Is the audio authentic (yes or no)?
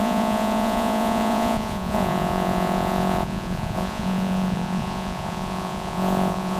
no